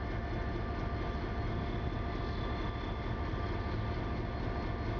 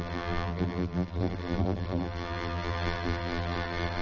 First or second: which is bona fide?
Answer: first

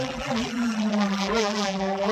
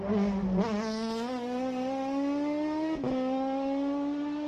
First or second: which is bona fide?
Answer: second